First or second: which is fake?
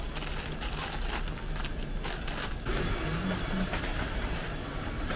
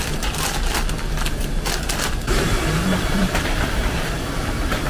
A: second